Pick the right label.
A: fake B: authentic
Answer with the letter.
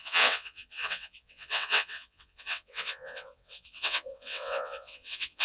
A